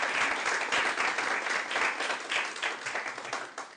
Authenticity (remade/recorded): recorded